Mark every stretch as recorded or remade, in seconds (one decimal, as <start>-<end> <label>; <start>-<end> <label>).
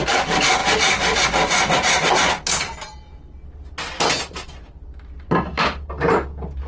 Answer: 0.0-0.6 recorded; 0.6-1.2 remade; 1.2-1.6 recorded; 1.6-3.0 remade; 3.0-6.7 recorded